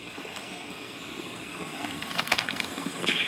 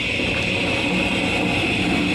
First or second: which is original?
second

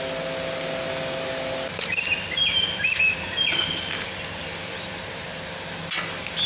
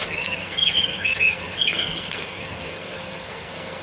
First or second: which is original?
first